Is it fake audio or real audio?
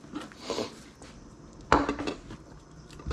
real